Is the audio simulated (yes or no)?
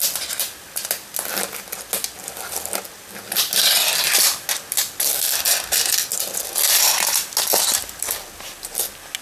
no